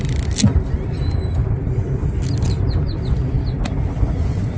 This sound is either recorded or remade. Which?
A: recorded